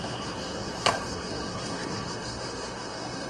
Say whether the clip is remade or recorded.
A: remade